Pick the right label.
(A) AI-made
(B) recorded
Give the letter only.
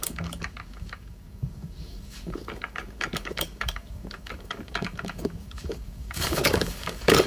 A